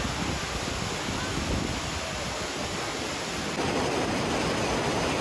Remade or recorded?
recorded